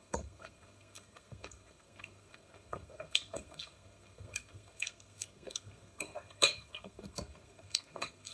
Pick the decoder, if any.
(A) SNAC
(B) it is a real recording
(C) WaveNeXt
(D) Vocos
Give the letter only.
A